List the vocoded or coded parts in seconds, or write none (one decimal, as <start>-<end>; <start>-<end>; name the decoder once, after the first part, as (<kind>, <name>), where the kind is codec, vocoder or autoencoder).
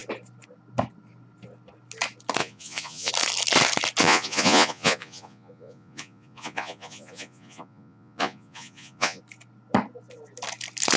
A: 2.4-3.1 (vocoder, Vocos); 4.0-9.2